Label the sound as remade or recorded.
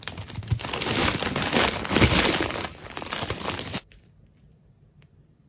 recorded